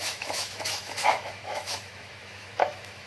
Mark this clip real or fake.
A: fake